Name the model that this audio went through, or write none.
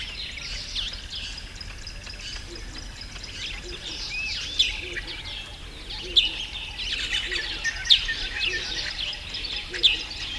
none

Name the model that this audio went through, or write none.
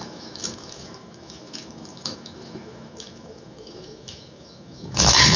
autoencoder, DAC-VAE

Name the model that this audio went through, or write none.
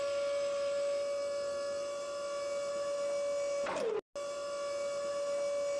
none